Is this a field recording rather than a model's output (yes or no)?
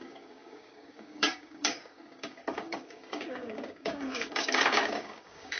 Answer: no